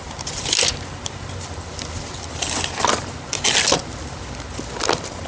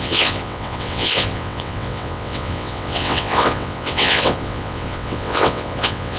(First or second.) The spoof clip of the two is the second